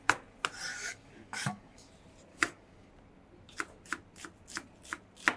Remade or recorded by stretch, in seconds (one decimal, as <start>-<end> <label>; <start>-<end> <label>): 0.0-0.7 recorded; 0.7-1.9 remade; 1.9-2.3 recorded; 2.3-2.9 remade; 2.9-5.4 recorded